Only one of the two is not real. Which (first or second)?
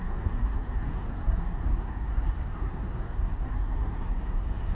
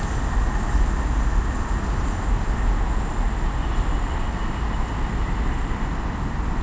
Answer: first